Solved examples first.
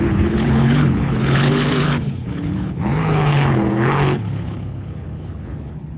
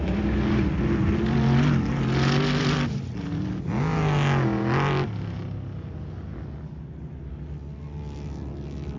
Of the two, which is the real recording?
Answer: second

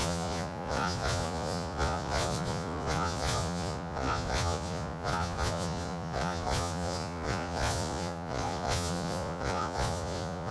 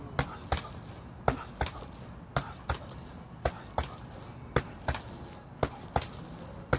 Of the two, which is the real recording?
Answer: second